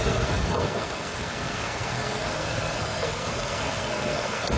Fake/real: fake